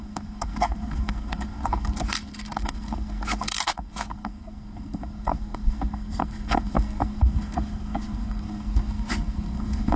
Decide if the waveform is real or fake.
fake